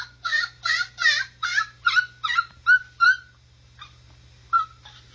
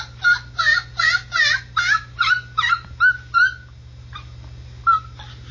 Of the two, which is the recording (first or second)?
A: second